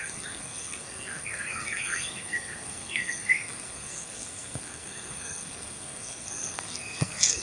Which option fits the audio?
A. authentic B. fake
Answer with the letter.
B